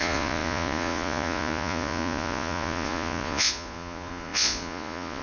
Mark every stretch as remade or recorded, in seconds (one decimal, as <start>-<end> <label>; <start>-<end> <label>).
0.0-5.2 remade